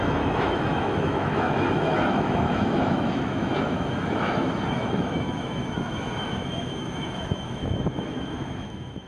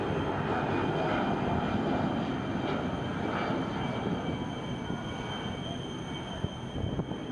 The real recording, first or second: second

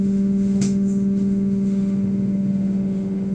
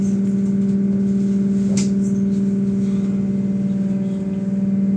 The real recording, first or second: second